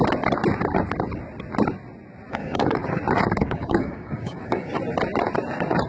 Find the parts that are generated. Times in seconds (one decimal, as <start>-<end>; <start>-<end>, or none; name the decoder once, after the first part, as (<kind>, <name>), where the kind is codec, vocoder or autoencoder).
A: 2.3-3.0 (codec, DAC); 3.4-4.7